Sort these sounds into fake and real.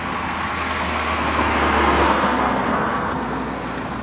fake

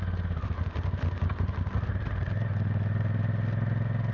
real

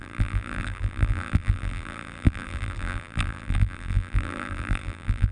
fake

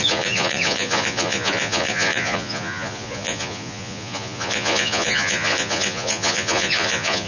fake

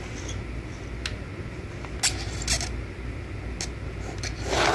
real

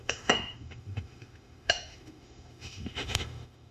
fake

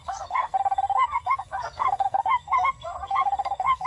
fake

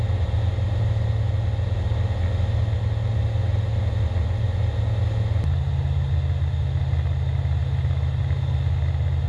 real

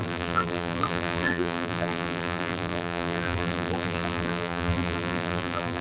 fake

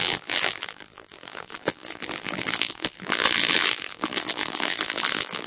fake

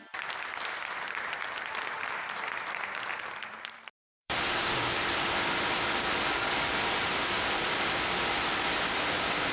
fake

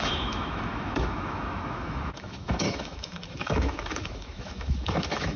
fake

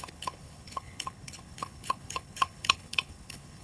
fake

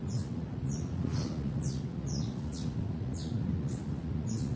fake